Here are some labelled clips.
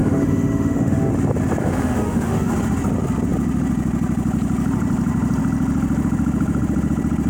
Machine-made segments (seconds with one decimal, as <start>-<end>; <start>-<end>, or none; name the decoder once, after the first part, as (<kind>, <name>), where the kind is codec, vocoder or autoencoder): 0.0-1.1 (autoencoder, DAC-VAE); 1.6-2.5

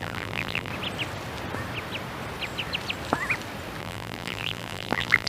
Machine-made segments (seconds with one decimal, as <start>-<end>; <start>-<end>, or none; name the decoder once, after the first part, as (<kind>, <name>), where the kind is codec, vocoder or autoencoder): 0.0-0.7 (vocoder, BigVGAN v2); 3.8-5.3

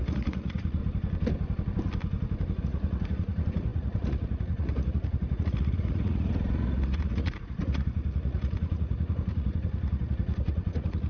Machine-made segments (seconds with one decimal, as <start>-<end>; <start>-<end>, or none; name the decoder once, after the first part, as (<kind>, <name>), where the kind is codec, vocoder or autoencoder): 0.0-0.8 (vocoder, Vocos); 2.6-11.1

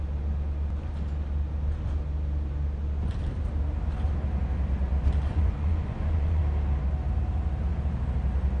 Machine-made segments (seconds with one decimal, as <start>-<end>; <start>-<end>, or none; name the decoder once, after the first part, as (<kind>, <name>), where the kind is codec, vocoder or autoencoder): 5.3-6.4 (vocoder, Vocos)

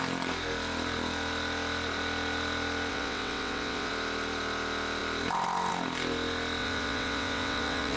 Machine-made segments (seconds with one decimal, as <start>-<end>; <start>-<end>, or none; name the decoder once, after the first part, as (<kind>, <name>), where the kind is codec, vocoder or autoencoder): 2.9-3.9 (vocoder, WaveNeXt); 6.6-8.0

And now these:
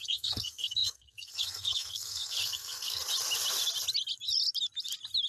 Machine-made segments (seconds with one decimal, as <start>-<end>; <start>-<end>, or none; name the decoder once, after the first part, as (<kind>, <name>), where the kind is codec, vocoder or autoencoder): 0.0-3.0 (codec, SNAC)

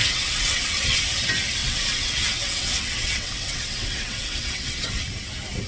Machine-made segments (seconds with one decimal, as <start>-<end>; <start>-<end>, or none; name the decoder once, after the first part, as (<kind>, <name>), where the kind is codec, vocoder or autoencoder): 0.0-1.0 (vocoder, WaveNeXt); 1.6-5.0